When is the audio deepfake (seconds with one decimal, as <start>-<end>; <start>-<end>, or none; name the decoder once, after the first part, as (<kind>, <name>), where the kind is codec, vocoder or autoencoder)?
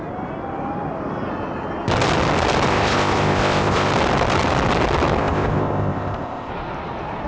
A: 2.7-3.9 (codec, ZipCodec); 5.2-6.5